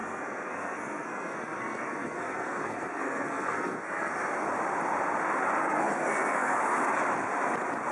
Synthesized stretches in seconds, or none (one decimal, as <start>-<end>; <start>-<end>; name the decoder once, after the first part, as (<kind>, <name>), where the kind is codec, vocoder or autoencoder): 0.0-4.1 (codec, SNAC); 5.6-6.6